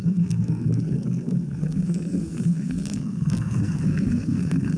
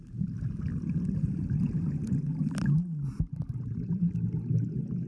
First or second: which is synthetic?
first